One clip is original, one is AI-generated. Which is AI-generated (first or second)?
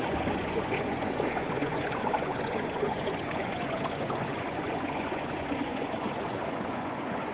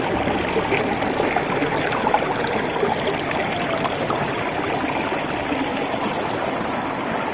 first